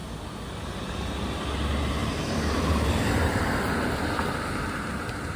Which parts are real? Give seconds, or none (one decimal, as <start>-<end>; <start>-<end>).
0.0-2.0